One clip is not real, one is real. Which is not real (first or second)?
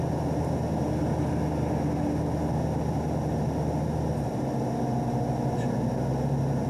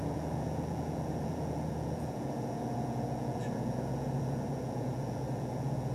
second